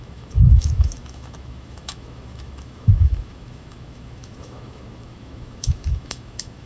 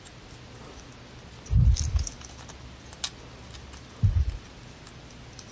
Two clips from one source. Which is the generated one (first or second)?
first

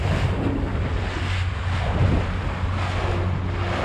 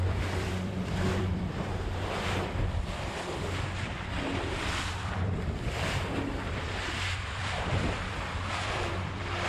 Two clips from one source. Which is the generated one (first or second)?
second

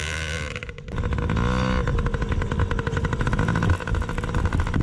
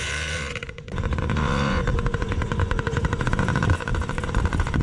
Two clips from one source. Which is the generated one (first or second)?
second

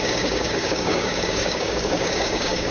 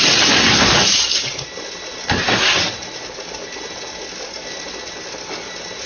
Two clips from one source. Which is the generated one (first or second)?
first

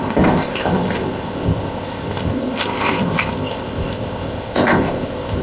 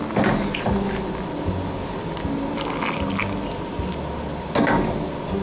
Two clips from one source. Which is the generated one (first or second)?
first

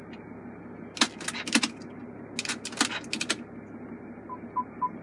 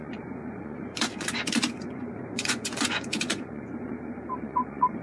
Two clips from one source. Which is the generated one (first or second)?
second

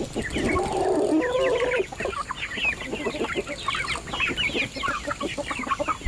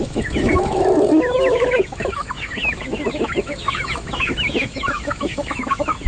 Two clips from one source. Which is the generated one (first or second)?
second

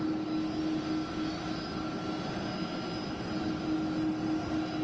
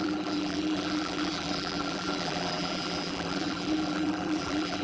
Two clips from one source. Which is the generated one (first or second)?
second